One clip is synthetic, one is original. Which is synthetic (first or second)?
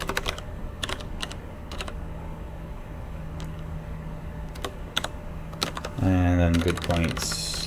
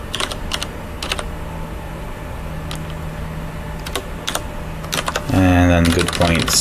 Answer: first